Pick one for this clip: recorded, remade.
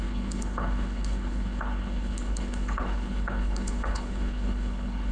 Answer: remade